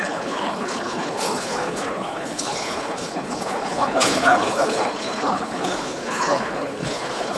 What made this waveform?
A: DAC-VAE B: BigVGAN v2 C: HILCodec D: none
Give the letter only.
C